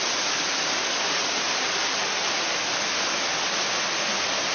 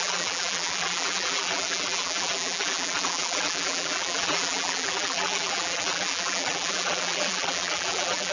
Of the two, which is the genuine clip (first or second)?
first